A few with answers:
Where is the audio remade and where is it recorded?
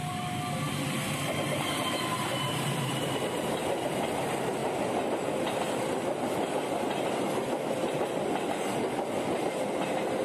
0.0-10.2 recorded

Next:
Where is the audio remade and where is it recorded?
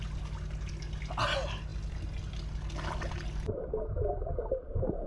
0.0-5.1 recorded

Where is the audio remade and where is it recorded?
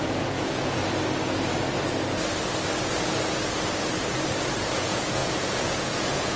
0.0-0.8 remade; 0.8-4.6 recorded; 4.6-6.4 remade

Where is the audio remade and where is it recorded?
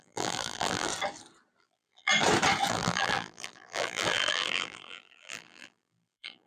0.0-0.9 remade; 0.9-1.6 recorded; 1.6-2.1 remade; 2.1-2.7 recorded; 2.7-6.5 remade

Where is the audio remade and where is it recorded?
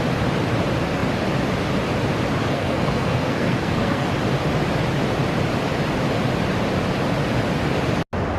0.0-2.4 recorded; 2.4-4.1 remade; 4.1-8.4 recorded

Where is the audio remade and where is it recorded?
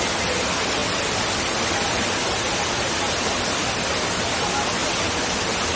0.0-5.8 recorded